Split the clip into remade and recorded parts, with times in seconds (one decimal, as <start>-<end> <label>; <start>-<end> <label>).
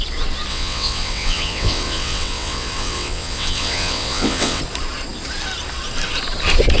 0.0-0.5 recorded; 0.5-4.6 remade; 4.6-6.8 recorded